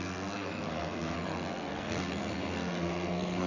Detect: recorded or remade remade